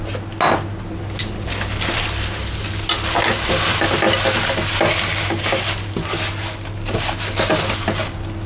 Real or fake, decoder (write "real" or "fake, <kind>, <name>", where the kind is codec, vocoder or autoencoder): real